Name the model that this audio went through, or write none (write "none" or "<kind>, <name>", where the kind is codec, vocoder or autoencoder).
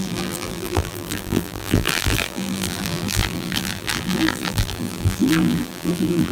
vocoder, BigVGAN v2